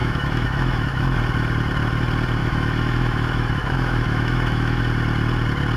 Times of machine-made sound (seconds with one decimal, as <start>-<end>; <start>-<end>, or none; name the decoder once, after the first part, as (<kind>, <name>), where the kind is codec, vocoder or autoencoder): 0.0-1.2 (autoencoder, DAC-VAE); 2.4-4.8